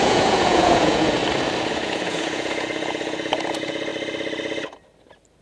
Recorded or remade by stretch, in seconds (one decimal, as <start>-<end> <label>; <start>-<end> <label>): 0.0-1.2 remade; 1.2-1.7 recorded; 1.7-3.9 remade; 3.9-5.4 recorded